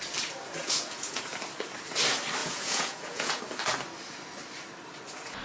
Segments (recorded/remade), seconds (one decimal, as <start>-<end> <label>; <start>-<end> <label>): 0.0-0.6 recorded; 0.6-1.2 remade; 1.2-2.4 recorded; 2.4-3.4 remade; 3.4-5.4 recorded